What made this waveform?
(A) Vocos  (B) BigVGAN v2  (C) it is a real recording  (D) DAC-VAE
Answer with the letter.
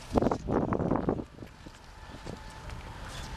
C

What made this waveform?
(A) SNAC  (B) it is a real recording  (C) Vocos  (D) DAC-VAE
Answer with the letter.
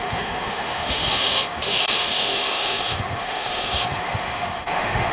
D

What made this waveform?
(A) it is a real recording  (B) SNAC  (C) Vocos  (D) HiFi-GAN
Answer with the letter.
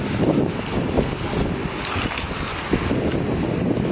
A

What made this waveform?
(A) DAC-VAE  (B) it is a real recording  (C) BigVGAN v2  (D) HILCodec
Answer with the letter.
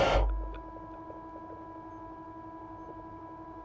B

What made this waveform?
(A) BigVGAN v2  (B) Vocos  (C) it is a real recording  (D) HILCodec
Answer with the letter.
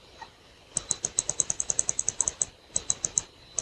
C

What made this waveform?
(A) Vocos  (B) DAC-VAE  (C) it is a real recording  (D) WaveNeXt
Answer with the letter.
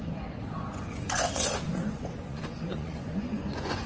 A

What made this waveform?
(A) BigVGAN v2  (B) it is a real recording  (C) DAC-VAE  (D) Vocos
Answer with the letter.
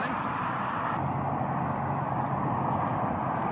B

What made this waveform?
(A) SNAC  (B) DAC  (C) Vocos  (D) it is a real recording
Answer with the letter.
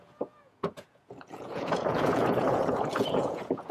C